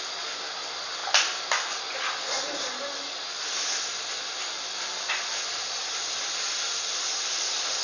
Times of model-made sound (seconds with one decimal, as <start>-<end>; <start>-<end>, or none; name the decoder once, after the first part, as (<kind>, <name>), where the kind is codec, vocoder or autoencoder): none